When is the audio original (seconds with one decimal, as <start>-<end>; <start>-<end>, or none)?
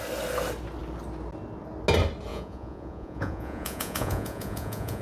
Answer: 0.0-2.3